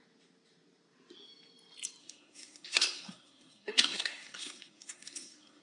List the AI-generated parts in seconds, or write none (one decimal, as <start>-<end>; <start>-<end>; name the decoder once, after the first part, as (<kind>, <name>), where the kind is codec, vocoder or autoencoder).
2.0-5.6 (codec, SNAC)